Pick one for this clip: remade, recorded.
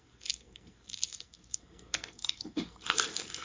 remade